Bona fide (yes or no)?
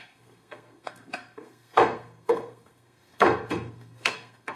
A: no